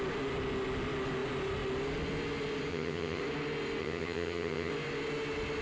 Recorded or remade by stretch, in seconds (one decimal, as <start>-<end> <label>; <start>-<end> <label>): 0.0-2.7 recorded; 2.7-3.2 remade; 3.2-3.8 recorded; 3.8-4.7 remade; 4.7-5.6 recorded